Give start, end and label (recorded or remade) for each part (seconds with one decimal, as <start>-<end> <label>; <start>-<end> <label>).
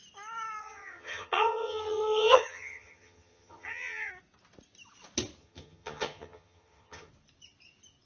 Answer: 0.0-0.6 recorded; 0.6-4.1 remade; 4.1-5.4 recorded; 5.4-7.1 remade; 7.1-8.1 recorded